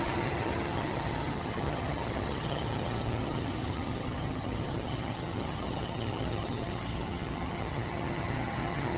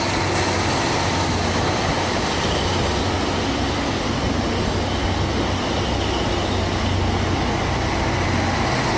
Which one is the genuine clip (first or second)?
second